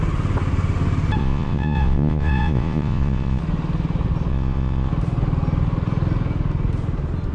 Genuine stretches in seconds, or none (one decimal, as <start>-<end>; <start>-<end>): 0.0-1.2; 3.4-4.3; 4.9-7.3